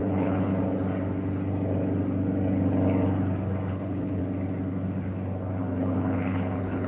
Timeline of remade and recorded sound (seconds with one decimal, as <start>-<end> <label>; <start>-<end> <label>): 0.0-0.5 remade; 0.5-3.7 recorded; 3.7-4.2 remade; 4.2-5.6 recorded; 5.6-6.9 remade